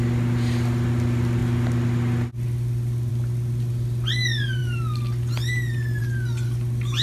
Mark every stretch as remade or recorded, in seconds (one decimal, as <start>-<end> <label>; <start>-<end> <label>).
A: 0.0-7.0 recorded